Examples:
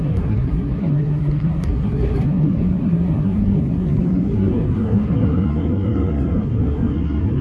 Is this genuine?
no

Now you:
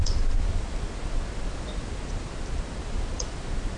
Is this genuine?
yes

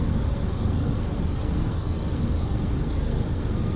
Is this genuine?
no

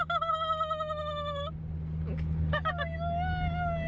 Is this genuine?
yes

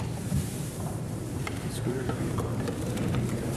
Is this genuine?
no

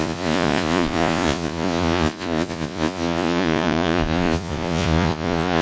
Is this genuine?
no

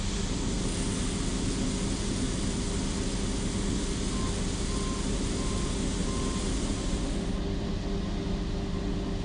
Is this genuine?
yes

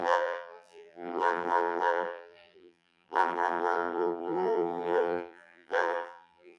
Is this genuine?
no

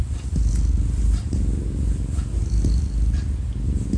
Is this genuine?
yes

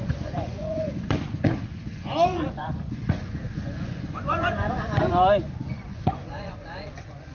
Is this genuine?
no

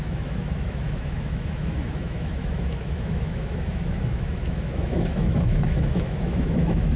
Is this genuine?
no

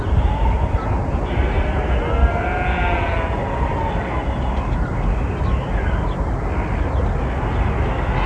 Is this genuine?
yes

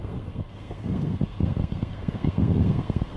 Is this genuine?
no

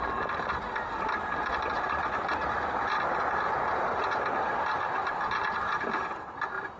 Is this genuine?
yes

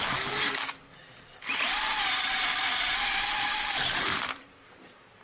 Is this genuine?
no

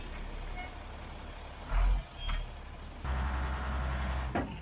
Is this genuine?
yes